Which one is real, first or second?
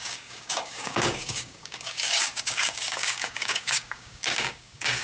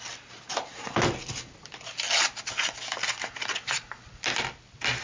second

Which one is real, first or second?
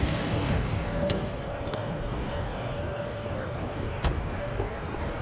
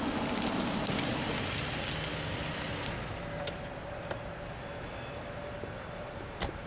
second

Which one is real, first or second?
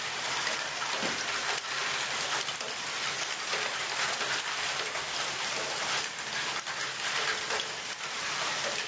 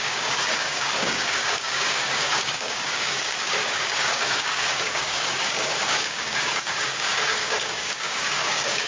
first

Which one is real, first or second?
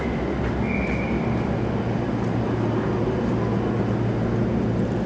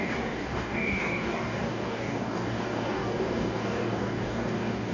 first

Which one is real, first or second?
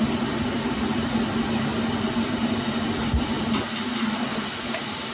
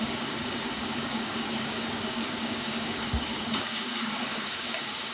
first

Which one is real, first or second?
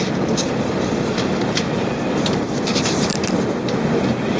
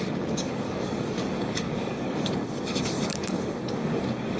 first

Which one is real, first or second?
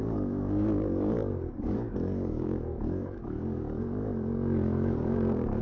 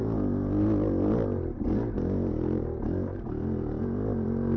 second